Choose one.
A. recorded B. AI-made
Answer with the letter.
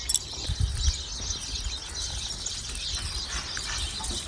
A